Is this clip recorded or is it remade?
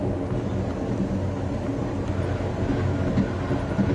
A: recorded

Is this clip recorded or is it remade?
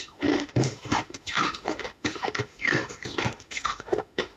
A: remade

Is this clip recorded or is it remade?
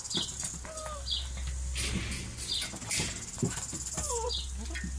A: recorded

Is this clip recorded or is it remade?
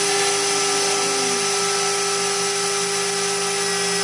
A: recorded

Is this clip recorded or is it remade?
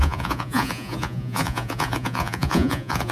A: remade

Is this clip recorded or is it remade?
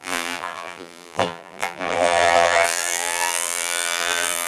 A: remade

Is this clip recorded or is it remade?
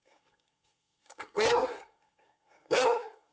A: remade